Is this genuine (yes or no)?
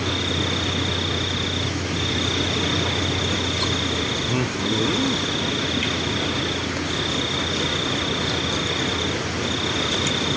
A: yes